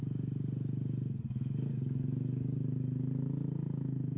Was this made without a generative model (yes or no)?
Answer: yes